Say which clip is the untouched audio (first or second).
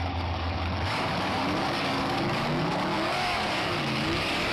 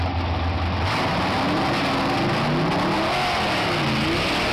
second